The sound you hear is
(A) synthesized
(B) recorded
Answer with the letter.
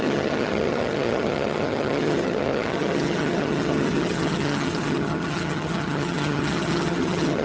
A